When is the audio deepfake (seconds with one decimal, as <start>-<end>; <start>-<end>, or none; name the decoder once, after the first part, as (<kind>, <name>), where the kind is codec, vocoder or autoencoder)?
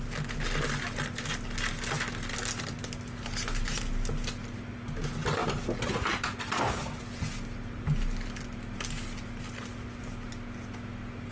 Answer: none